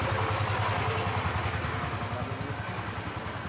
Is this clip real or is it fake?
real